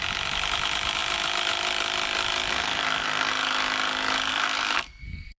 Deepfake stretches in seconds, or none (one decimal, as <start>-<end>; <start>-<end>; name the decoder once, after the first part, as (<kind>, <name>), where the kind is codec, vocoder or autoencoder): 2.5-3.3 (codec, SNAC); 4.3-5.4